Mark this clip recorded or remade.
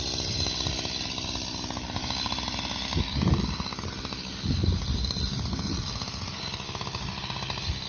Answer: recorded